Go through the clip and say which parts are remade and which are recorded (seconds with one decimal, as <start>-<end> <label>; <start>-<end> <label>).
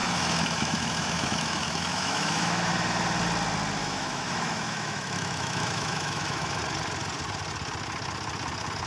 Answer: 0.0-2.7 remade; 2.7-3.8 recorded; 3.8-6.6 remade; 6.6-8.9 recorded